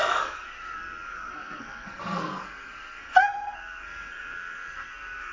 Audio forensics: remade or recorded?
remade